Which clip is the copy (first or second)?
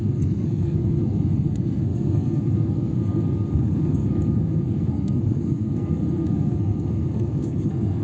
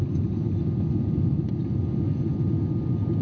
first